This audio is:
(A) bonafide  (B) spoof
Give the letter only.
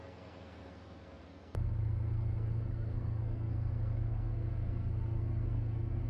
B